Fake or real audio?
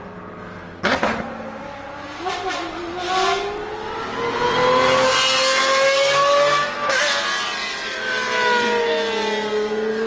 real